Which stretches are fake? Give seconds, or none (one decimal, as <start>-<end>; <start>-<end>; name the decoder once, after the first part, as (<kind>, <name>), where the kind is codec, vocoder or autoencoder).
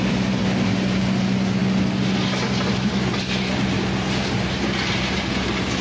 none